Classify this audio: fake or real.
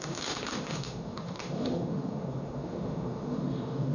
fake